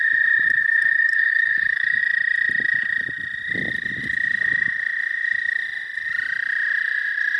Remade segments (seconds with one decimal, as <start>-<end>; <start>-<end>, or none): 0.6-2.0